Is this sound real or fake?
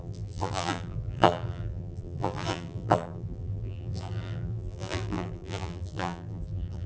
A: fake